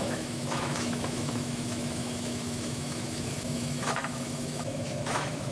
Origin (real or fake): fake